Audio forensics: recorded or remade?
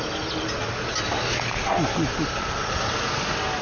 recorded